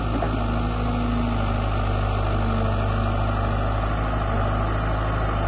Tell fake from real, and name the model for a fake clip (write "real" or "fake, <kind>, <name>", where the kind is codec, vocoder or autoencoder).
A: real